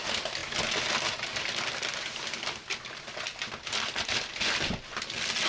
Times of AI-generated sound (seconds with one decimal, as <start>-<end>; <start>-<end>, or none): none